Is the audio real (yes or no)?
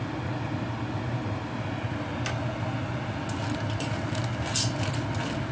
yes